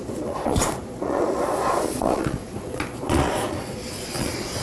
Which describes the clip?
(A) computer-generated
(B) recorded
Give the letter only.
A